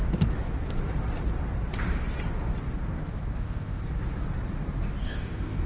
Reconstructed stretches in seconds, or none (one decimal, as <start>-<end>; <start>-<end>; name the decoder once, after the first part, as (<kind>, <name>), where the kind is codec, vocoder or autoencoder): 3.4-3.8 (codec, ZipCodec); 5.0-5.7